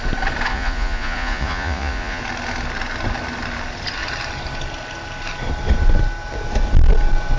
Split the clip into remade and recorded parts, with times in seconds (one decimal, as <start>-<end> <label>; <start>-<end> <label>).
0.0-0.5 recorded; 0.5-2.2 remade; 2.2-7.4 recorded